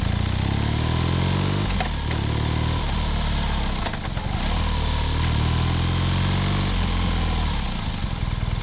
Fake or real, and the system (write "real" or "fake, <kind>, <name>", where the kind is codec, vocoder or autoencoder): real